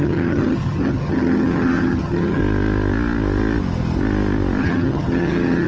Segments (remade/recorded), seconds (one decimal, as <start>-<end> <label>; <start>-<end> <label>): 0.0-2.4 remade; 2.4-4.6 recorded; 4.6-5.7 remade